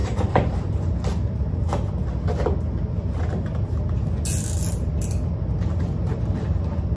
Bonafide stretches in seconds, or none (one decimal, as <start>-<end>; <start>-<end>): 1.0-7.0